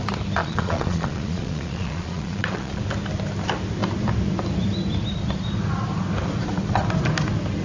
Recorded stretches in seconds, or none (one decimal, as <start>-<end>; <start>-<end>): 0.0-0.4; 2.8-7.6